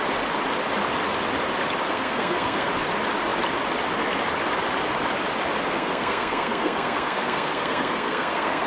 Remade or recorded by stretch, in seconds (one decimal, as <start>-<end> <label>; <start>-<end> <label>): 0.0-1.9 recorded; 1.9-2.7 remade; 2.7-5.6 recorded; 5.6-8.7 remade